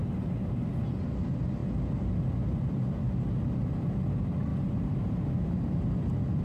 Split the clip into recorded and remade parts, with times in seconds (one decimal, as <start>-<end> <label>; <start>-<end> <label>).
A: 0.0-0.8 remade; 0.8-4.5 recorded; 4.5-5.7 remade; 5.7-6.4 recorded